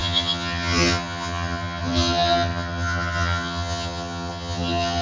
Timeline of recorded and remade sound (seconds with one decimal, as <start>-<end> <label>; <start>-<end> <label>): 0.0-5.0 remade